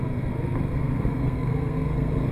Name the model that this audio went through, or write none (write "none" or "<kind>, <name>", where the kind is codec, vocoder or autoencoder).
codec, SNAC